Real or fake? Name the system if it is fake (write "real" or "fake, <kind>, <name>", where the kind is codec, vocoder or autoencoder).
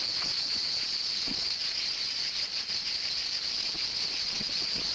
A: real